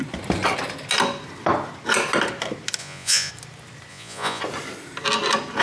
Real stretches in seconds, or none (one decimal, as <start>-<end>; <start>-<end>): 0.0-2.8; 3.3-3.9; 4.4-5.6